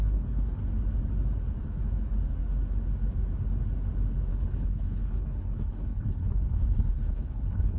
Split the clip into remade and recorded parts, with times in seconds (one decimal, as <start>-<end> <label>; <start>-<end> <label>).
0.0-0.6 remade; 0.6-4.3 recorded; 4.3-7.8 remade